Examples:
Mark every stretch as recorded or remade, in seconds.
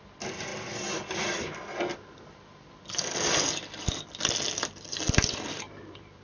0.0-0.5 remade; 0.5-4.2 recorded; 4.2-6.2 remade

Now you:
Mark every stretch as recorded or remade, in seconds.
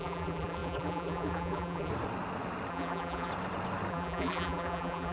0.0-1.9 remade; 1.9-2.7 recorded; 2.7-3.3 remade; 3.3-3.9 recorded; 3.9-5.1 remade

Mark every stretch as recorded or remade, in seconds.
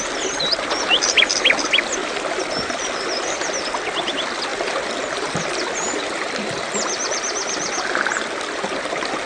0.0-2.0 recorded; 2.0-3.6 remade; 3.6-4.5 recorded; 4.5-7.9 remade; 7.9-9.3 recorded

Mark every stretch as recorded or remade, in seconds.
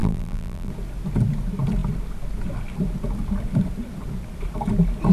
0.0-0.7 remade; 0.7-5.1 recorded